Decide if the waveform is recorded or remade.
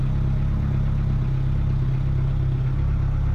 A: recorded